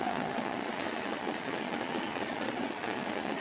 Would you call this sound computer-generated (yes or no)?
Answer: yes